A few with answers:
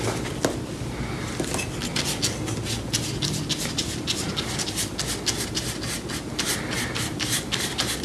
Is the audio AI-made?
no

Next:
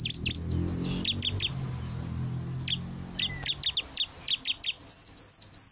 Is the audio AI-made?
no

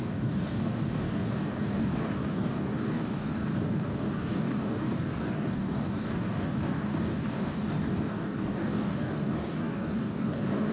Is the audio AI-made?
yes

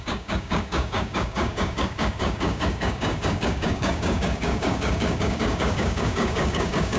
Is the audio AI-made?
yes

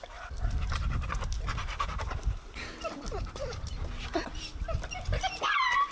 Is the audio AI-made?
yes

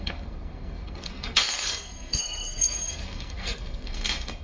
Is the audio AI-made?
yes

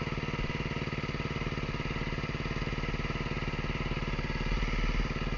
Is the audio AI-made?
no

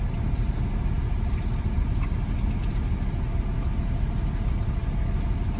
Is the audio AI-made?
no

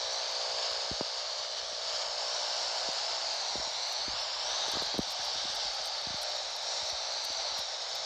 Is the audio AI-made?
no